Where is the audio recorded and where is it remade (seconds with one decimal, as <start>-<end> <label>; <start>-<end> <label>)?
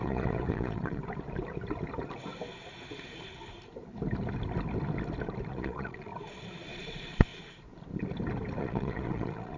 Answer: 0.0-1.0 remade; 1.0-5.5 recorded; 5.5-6.1 remade; 6.1-6.7 recorded; 6.7-7.3 remade; 7.3-8.6 recorded; 8.6-9.6 remade